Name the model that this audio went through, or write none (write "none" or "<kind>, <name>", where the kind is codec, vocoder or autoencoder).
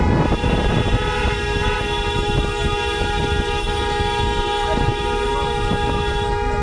none